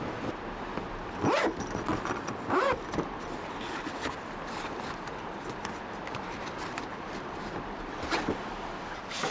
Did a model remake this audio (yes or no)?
no